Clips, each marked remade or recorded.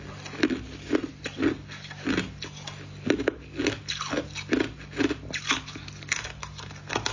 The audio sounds recorded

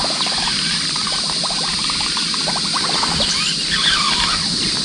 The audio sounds recorded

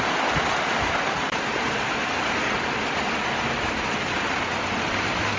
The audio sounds recorded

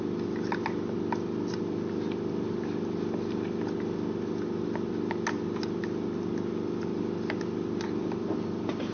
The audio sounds recorded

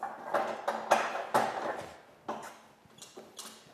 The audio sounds recorded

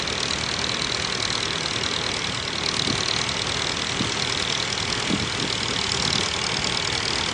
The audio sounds recorded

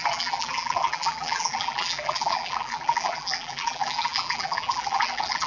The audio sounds remade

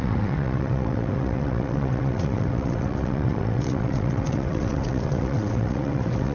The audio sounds remade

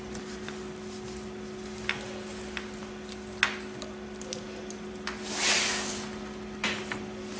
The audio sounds recorded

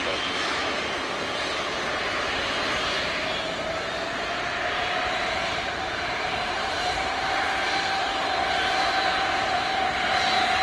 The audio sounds remade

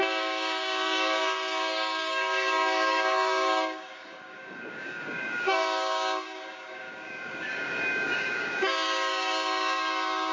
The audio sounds remade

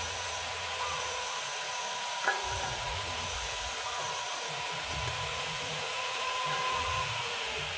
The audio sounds remade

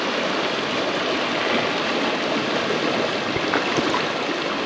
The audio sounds recorded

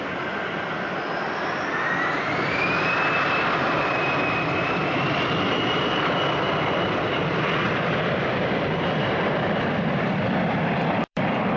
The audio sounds remade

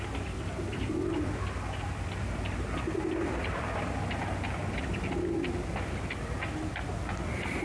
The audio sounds recorded